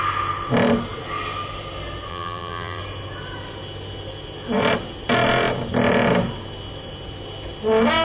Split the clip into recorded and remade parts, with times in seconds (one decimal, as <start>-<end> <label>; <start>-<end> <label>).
0.0-2.1 recorded; 2.1-2.8 remade; 2.8-8.0 recorded